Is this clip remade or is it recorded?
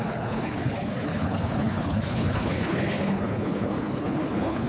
remade